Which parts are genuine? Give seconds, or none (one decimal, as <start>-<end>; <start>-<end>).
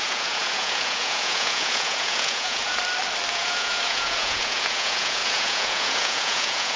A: 2.8-3.3